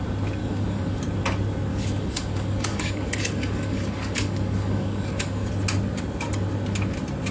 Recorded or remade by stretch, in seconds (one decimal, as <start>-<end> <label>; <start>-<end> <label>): 0.0-0.4 recorded; 0.4-1.0 remade; 1.0-1.7 recorded; 1.7-5.5 remade; 5.5-7.3 recorded